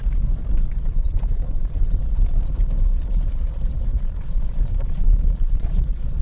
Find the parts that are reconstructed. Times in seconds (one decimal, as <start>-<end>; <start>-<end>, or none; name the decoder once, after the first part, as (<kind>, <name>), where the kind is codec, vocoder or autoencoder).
0.4-2.0 (vocoder, Vocos); 3.9-6.2